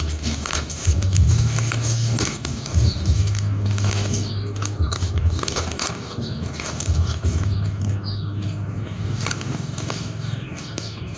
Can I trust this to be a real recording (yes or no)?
no